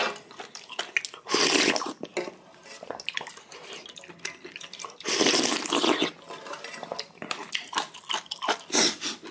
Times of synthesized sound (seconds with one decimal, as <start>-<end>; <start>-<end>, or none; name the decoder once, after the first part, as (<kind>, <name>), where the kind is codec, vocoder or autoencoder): none